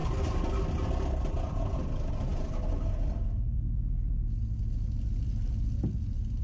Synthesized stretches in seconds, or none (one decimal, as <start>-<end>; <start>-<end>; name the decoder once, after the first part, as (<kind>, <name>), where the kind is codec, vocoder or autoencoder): none